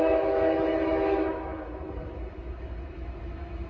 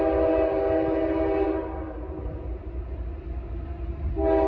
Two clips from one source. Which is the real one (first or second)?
second